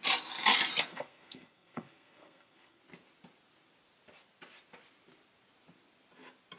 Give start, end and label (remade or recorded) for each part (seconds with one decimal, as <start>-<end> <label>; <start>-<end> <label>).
0.0-0.9 recorded; 0.9-2.8 remade; 2.8-6.6 recorded

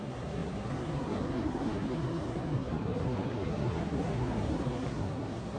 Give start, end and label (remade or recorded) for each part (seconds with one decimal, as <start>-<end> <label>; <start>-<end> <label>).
0.0-5.6 remade

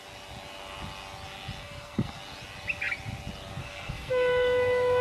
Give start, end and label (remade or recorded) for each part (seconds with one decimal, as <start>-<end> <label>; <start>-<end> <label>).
0.0-1.6 recorded; 1.6-2.2 remade; 2.2-3.6 recorded; 3.6-5.0 remade

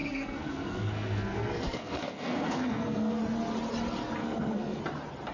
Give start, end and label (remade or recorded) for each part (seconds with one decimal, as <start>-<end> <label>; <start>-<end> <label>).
0.0-3.2 remade; 3.2-4.2 recorded; 4.2-4.8 remade; 4.8-5.3 recorded

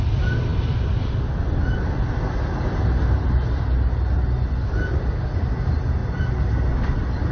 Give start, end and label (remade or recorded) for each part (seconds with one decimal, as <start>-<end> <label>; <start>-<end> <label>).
0.0-7.3 recorded

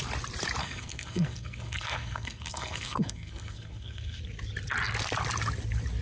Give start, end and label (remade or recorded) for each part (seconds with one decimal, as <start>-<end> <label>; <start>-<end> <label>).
0.0-0.6 recorded; 0.6-4.2 remade; 4.2-6.0 recorded

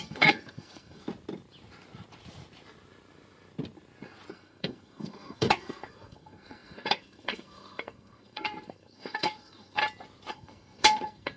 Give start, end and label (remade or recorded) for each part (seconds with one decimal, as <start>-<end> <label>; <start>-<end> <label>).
0.0-1.0 remade; 1.0-4.3 recorded; 4.3-9.8 remade; 9.8-10.3 recorded; 10.3-11.4 remade

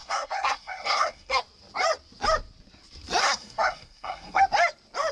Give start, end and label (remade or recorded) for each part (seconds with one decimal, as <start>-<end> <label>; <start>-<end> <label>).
0.0-1.4 remade; 1.4-3.2 recorded; 3.2-4.4 remade; 4.4-5.1 recorded